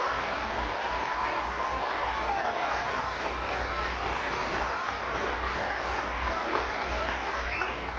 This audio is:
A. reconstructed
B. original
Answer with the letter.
A